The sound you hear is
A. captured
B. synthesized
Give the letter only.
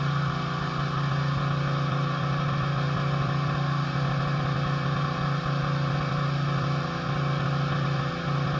A